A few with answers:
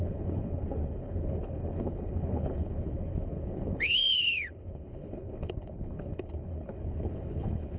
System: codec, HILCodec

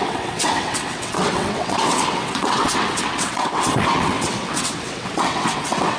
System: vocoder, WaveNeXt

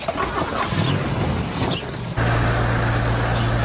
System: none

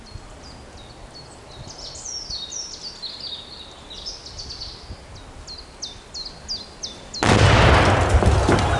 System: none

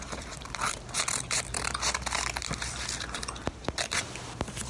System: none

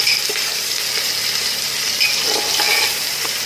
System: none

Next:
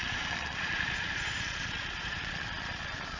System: vocoder, Vocos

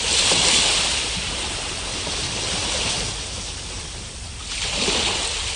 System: none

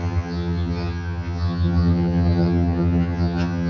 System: vocoder, HiFi-GAN